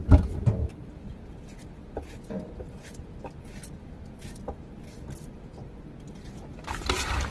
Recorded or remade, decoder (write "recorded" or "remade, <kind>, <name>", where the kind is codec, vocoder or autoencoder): recorded